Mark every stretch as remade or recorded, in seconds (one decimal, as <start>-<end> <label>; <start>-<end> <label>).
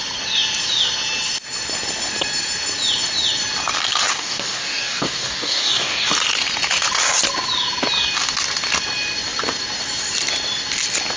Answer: 0.0-4.1 recorded; 4.1-6.1 remade; 6.1-11.2 recorded